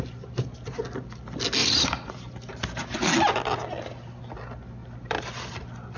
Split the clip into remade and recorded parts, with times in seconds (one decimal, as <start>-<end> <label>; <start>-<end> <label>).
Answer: 0.0-1.6 recorded; 1.6-2.1 remade; 2.1-4.8 recorded; 4.8-5.5 remade; 5.5-6.0 recorded